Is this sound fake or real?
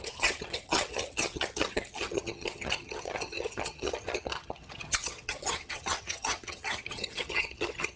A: fake